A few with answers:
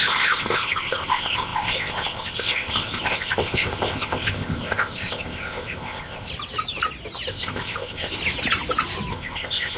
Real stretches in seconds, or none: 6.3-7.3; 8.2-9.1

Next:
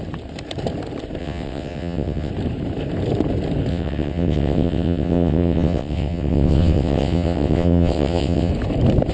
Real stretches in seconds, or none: 0.0-1.2; 2.3-3.7; 8.5-9.1

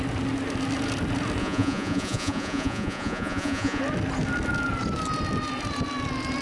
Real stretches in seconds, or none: 0.0-1.4; 3.8-6.4